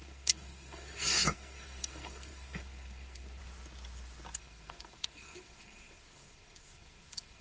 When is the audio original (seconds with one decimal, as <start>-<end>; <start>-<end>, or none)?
3.4-4.4